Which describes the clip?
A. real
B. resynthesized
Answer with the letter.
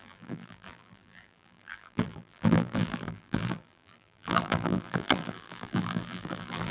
B